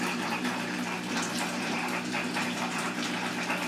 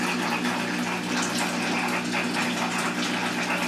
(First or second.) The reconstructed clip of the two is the first